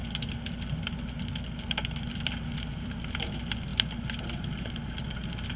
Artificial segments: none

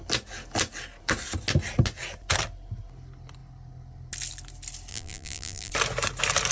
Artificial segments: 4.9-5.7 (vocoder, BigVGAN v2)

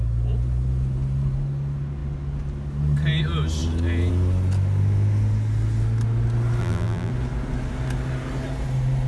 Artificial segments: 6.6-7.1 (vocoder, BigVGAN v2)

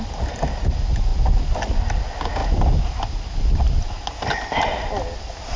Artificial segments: none

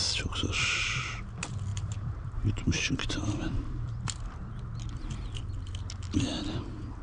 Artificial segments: 0.0-1.0 (vocoder, BigVGAN v2); 1.7-4.5

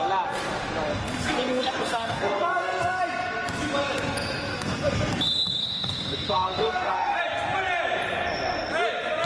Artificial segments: 0.9-3.0 (codec, SNAC); 4.5-5.1; 5.6-7.2

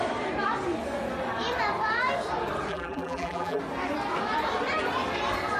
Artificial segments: 2.7-3.6 (vocoder, BigVGAN v2)

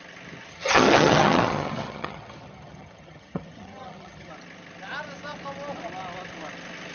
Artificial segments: 0.5-4.3 (vocoder, HiFi-GAN)